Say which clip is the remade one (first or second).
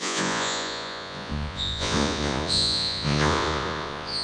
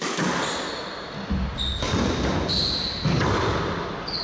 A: first